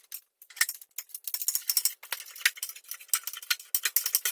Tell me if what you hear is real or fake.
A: real